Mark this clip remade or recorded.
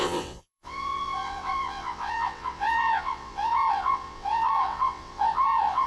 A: remade